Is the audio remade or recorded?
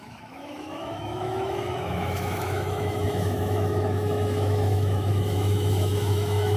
remade